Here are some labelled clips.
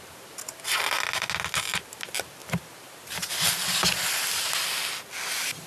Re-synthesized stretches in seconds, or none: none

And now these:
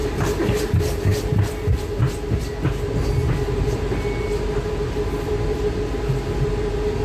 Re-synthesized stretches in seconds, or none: 0.0-0.7 (vocoder, BigVGAN v2)

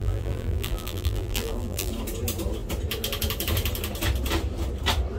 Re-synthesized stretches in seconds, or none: 0.0-1.9 (vocoder, BigVGAN v2)

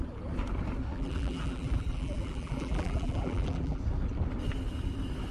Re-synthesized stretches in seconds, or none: 0.9-3.8 (vocoder, BigVGAN v2)